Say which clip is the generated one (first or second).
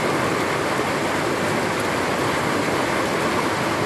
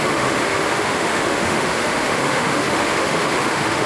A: second